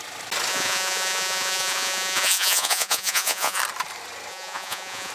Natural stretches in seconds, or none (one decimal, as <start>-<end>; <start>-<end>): 0.0-0.5; 3.6-4.3